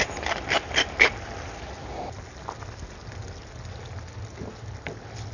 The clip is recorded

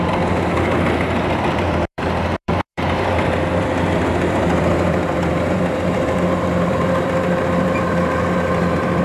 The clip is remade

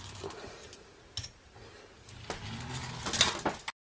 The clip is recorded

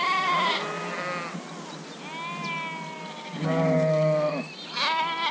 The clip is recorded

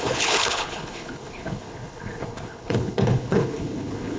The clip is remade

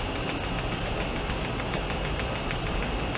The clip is recorded